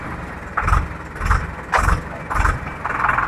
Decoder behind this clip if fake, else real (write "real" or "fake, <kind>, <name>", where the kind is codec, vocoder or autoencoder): real